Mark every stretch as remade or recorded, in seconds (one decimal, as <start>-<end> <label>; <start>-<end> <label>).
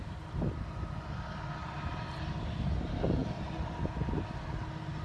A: 0.0-1.6 recorded; 1.6-2.7 remade; 2.7-3.2 recorded; 3.2-3.9 remade; 3.9-5.0 recorded